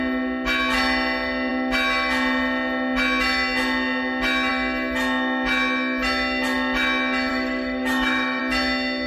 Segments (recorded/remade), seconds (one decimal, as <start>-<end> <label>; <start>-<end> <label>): 0.0-7.3 recorded; 7.3-8.4 remade; 8.4-9.1 recorded